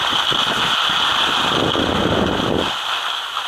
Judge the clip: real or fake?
real